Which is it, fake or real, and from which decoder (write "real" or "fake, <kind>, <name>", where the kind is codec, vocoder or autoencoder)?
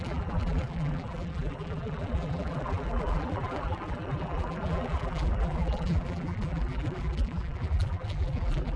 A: fake, vocoder, BigVGAN v2